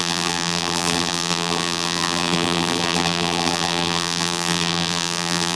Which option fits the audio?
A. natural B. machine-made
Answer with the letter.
B